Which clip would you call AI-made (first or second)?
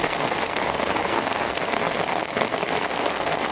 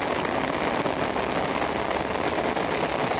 first